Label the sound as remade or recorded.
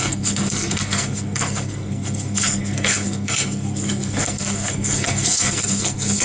remade